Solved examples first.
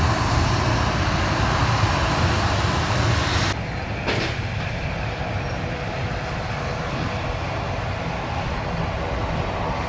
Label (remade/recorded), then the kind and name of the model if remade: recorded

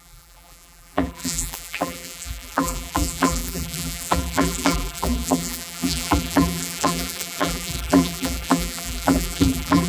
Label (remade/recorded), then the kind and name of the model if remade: remade, vocoder, BigVGAN v2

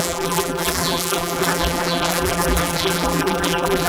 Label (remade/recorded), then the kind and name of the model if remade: remade, vocoder, BigVGAN v2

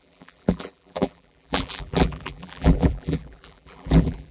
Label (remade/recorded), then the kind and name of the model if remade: remade, vocoder, BigVGAN v2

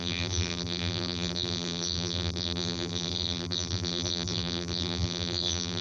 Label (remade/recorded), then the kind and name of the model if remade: remade, vocoder, BigVGAN v2